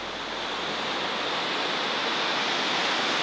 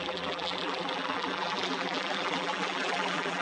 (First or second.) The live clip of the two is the first